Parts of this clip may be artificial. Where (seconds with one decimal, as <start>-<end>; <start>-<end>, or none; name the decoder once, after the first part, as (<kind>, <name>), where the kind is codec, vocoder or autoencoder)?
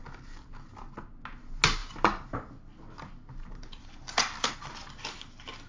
none